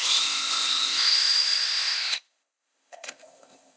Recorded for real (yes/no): no